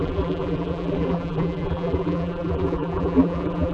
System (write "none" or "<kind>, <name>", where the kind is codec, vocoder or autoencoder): vocoder, BigVGAN v2